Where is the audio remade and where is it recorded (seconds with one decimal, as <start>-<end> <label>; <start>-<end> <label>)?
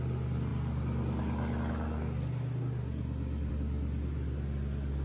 0.0-5.0 recorded